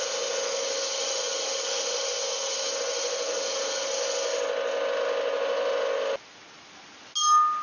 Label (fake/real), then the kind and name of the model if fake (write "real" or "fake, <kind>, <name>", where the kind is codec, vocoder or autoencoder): real